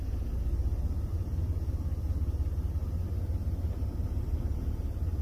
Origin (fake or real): real